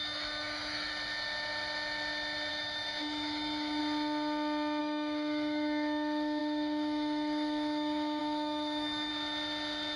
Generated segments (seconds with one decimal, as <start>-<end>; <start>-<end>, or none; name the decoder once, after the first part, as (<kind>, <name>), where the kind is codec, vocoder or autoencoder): 0.0-0.9 (autoencoder, DAC-VAE); 2.5-3.8; 4.8-9.1